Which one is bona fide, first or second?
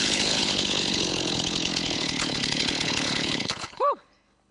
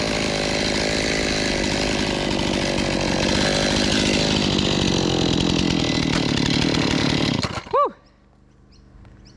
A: second